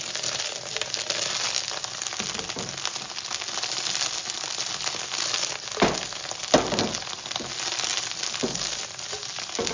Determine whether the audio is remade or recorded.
recorded